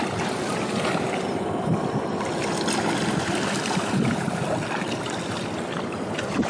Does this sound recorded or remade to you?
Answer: recorded